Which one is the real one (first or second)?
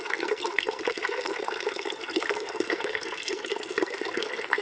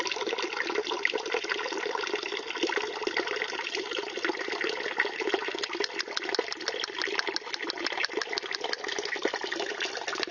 second